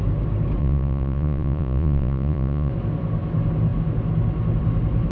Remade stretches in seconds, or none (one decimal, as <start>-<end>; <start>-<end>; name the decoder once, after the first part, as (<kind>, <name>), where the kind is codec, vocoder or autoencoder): 0.6-2.7 (vocoder, Vocos)